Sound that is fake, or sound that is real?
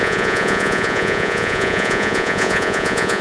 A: fake